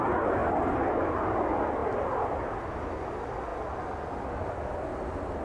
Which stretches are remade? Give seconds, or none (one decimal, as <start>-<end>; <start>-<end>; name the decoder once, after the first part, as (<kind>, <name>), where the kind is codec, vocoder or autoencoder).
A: none